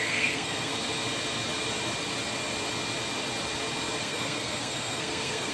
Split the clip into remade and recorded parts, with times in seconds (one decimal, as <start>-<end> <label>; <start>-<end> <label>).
0.0-0.7 remade; 0.7-4.0 recorded; 4.0-5.5 remade